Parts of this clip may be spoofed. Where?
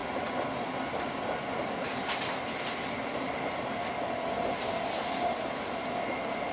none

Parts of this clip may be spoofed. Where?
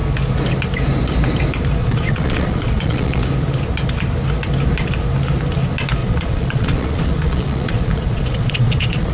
1.8-3.2 (vocoder, Vocos); 6.0-9.1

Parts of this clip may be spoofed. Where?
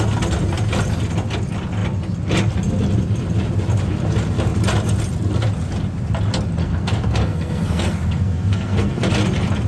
6.6-9.1 (codec, SNAC)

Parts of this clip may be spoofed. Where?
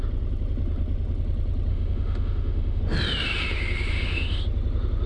1.7-2.8 (autoencoder, DAC-VAE); 3.9-4.4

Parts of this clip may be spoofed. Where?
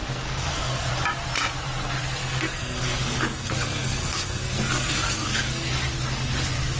0.0-0.9 (codec, SNAC); 2.2-5.7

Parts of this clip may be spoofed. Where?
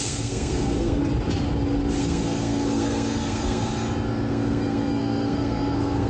0.0-1.0 (codec, SNAC); 2.0-3.7; 4.3-6.1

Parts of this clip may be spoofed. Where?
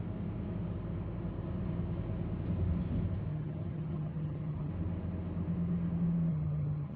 3.3-4.7 (vocoder, HiFi-GAN); 6.3-7.0